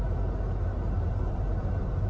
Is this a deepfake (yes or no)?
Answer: no